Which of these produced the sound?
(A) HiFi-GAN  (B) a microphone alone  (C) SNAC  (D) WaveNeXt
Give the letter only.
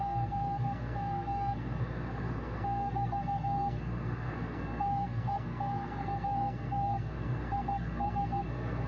C